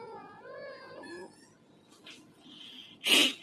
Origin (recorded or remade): recorded